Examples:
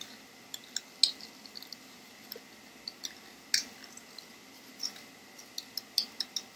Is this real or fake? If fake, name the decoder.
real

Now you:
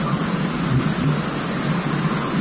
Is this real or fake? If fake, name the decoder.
real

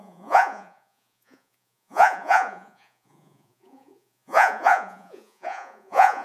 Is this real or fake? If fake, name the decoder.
fake, vocoder, Vocos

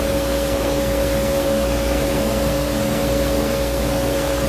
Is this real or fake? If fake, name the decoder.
fake, codec, SNAC